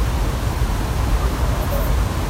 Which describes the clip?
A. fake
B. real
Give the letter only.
B